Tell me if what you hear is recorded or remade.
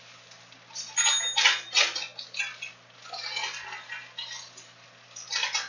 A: recorded